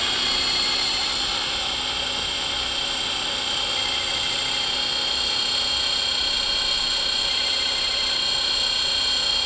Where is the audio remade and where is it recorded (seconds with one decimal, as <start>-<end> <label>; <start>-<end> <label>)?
0.0-9.5 recorded